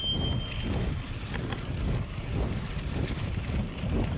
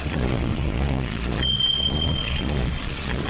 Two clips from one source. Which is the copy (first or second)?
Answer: second